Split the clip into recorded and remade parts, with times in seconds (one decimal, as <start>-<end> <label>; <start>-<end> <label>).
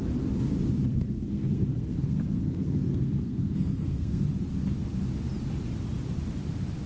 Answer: 0.0-0.9 recorded; 0.9-4.2 remade; 4.2-6.9 recorded